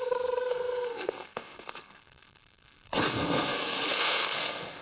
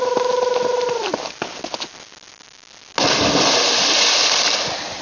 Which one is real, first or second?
second